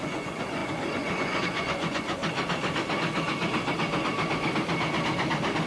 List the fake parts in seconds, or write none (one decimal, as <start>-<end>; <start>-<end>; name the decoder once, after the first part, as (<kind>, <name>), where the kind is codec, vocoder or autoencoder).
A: 0.0-2.2 (vocoder, Vocos)